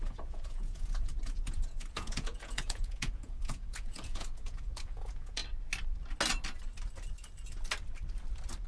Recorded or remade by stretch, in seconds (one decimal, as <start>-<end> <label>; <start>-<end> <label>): 0.0-5.4 remade; 5.4-8.7 recorded